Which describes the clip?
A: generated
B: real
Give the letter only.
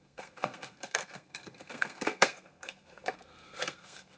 A